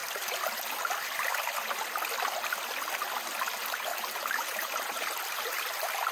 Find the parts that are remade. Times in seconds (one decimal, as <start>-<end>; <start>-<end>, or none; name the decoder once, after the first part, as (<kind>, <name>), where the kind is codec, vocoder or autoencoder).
3.9-5.6 (vocoder, BigVGAN v2)